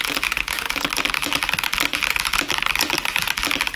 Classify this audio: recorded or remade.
remade